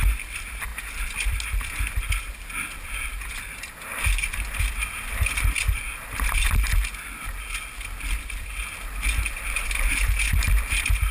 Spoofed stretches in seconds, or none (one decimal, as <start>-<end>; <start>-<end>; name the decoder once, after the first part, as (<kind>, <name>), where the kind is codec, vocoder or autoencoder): none